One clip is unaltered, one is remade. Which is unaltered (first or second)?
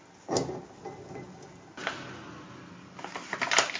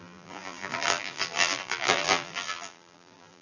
first